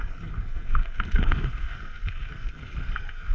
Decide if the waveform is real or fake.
fake